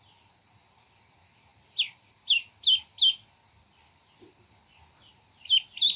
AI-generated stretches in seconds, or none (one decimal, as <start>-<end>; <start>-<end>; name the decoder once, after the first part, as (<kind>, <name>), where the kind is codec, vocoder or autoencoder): none